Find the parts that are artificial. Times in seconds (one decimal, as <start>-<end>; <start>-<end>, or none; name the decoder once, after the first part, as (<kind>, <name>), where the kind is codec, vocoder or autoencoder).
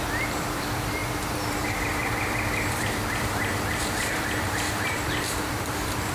0.0-6.1 (vocoder, BigVGAN v2)